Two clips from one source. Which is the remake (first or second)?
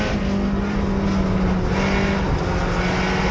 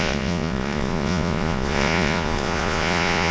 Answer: second